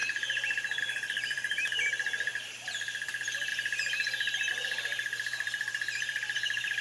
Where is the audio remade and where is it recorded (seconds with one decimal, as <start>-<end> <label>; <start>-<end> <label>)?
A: 0.0-0.8 recorded; 0.8-3.5 remade; 3.5-4.5 recorded; 4.5-6.8 remade